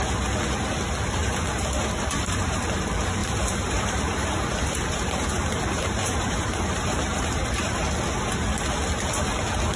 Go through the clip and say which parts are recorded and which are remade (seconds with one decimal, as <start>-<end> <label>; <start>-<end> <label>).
0.0-1.2 recorded; 1.2-2.8 remade; 2.8-3.2 recorded; 3.2-7.5 remade; 7.5-9.8 recorded